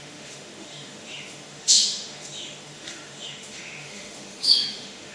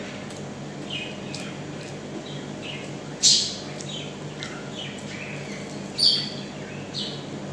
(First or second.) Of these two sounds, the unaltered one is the second